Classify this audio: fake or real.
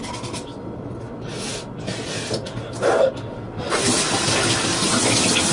real